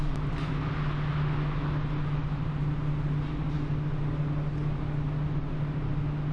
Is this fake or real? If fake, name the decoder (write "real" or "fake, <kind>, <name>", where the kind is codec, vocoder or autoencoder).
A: real